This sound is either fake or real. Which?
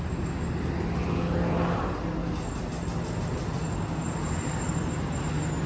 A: real